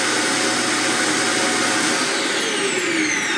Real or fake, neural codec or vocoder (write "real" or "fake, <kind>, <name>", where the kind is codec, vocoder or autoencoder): real